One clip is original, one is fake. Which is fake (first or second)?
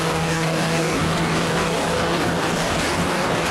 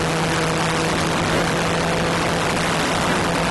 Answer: first